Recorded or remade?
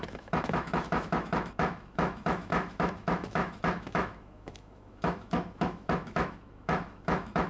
remade